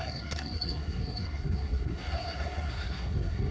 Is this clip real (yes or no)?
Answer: no